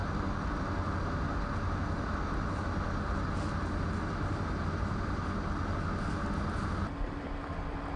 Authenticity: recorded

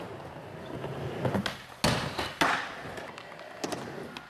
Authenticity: recorded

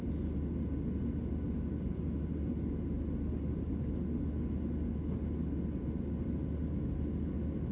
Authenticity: recorded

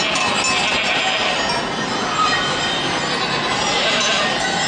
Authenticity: recorded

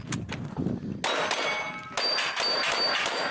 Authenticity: recorded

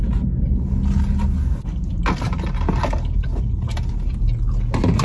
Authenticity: recorded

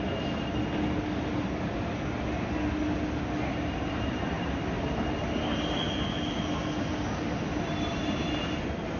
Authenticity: recorded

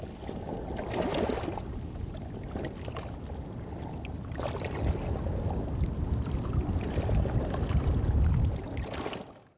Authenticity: recorded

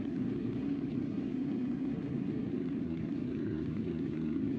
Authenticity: remade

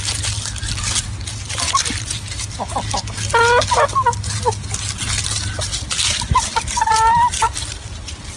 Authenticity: recorded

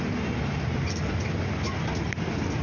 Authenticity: recorded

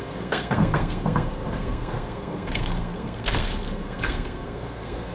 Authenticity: remade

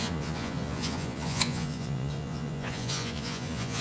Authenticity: remade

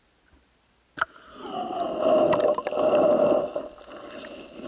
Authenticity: recorded